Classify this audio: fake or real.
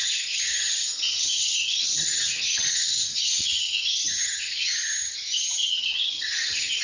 fake